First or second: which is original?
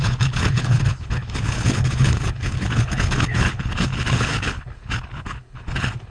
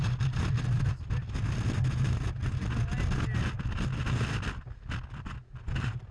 second